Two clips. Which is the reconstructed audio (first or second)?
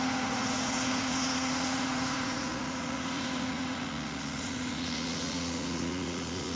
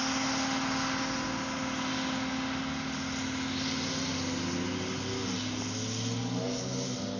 first